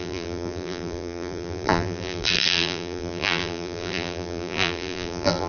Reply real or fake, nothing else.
fake